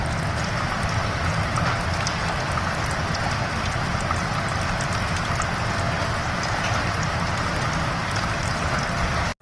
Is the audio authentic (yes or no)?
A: yes